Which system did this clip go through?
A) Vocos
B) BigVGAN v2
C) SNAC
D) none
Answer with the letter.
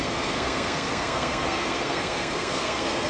C